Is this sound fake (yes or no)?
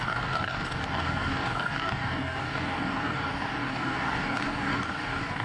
yes